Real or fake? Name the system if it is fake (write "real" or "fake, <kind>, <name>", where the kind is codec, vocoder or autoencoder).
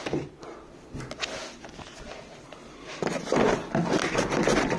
real